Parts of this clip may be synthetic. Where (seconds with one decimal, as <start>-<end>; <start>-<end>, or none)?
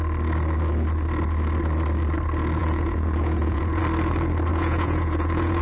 2.6-3.8; 4.5-5.6